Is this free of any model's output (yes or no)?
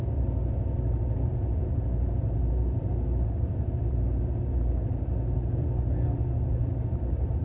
yes